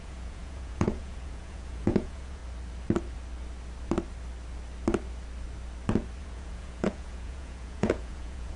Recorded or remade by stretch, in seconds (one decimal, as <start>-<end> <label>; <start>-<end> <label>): 0.0-2.4 remade; 2.4-6.2 recorded; 6.2-8.6 remade